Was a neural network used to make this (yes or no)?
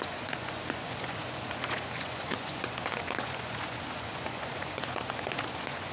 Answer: yes